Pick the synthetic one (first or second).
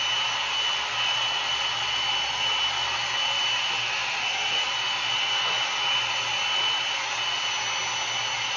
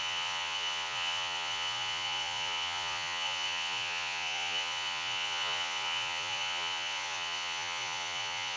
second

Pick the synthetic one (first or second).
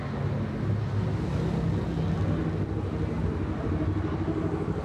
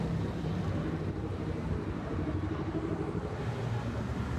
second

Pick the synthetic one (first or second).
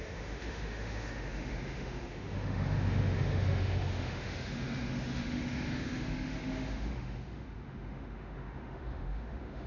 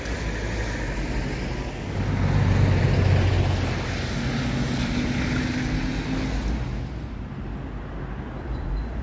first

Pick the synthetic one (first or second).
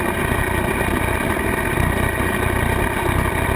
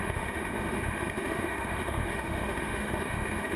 second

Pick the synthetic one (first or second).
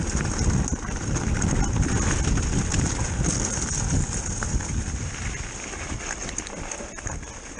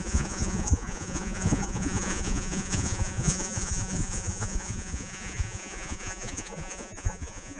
second